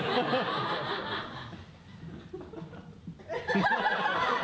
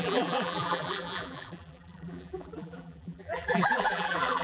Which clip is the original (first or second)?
first